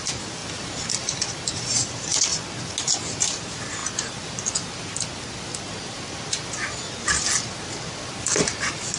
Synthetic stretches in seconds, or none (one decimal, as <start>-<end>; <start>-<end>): none